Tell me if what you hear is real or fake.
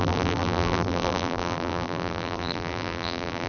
fake